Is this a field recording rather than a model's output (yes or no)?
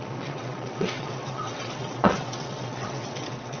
no